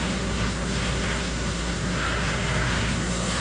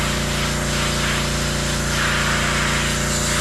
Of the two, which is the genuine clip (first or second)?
second